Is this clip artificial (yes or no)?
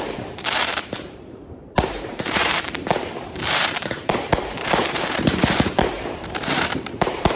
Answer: yes